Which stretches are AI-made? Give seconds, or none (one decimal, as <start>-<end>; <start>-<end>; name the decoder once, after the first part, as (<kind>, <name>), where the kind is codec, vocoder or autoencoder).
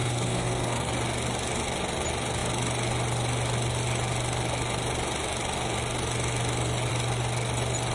0.0-0.9 (codec, SNAC)